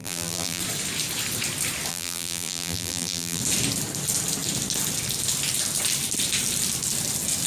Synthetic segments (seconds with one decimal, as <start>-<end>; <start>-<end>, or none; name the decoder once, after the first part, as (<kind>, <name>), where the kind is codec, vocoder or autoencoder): 0.0-0.6 (vocoder, BigVGAN v2); 1.9-3.4